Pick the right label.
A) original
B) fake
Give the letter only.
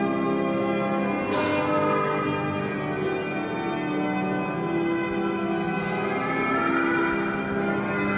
A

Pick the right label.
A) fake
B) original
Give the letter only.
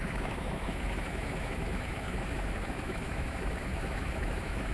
A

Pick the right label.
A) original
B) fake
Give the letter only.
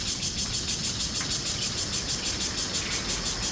A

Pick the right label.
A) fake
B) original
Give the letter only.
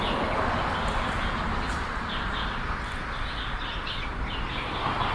B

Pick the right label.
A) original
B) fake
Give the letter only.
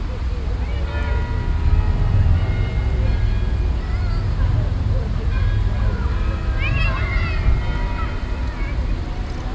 A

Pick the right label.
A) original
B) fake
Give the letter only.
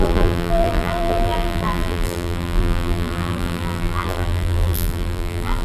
B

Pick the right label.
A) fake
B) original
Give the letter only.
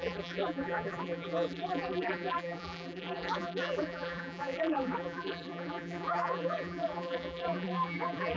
A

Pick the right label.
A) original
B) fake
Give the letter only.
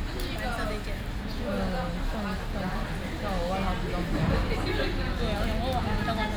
A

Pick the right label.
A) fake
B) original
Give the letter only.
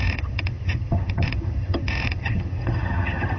A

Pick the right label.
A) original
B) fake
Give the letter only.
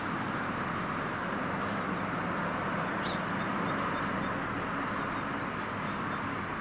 A